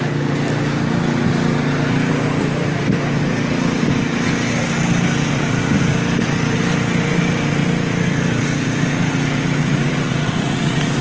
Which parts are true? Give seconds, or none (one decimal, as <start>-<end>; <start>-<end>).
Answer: 0.0-9.6